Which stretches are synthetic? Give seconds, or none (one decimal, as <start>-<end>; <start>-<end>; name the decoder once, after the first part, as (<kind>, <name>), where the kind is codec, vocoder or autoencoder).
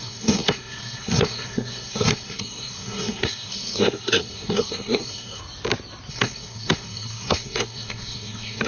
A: 0.0-5.4 (codec, SNAC); 6.1-8.7